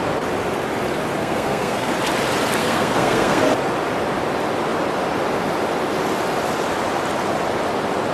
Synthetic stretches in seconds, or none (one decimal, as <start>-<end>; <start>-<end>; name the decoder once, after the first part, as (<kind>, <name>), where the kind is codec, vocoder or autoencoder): 1.2-1.9 (codec, SNAC); 2.6-3.4